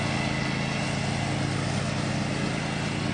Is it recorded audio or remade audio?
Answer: recorded